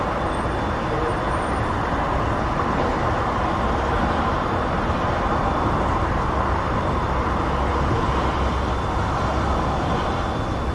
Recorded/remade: recorded